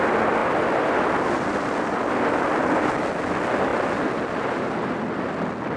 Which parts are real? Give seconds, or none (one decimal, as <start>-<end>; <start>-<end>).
0.0-5.8

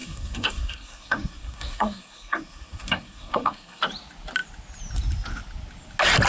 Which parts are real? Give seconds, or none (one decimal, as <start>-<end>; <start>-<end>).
3.8-6.3

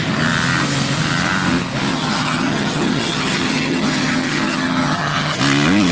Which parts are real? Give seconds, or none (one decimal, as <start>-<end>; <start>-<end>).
0.0-1.9; 5.4-5.9

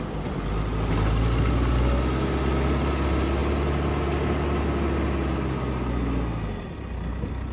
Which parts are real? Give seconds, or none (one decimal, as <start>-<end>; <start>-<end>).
0.0-7.5